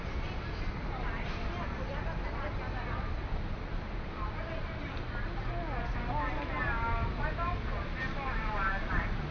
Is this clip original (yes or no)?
yes